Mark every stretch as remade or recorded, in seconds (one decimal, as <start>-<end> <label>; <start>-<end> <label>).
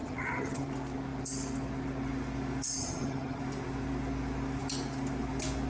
0.0-0.7 remade; 0.7-2.8 recorded; 2.8-3.4 remade; 3.4-5.7 recorded